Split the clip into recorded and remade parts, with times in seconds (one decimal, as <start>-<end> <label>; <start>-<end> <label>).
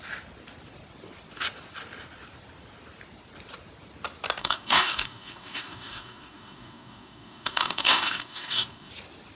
0.0-4.4 recorded; 4.4-8.9 remade; 8.9-9.3 recorded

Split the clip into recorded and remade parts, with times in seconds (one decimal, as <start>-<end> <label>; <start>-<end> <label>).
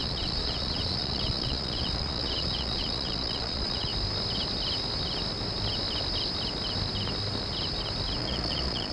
0.0-3.9 remade; 3.9-8.2 recorded; 8.2-8.9 remade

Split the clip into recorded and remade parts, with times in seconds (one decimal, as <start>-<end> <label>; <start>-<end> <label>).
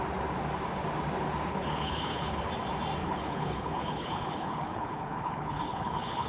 0.0-1.5 recorded; 1.5-2.4 remade; 2.4-3.0 recorded; 3.0-6.3 remade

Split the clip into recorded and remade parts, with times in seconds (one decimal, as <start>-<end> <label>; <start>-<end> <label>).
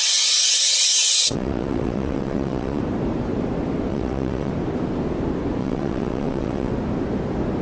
0.0-1.0 recorded; 1.0-2.8 remade; 2.8-3.9 recorded; 3.9-4.5 remade; 4.5-5.6 recorded; 5.6-6.7 remade; 6.7-7.6 recorded